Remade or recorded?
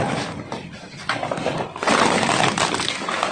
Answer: recorded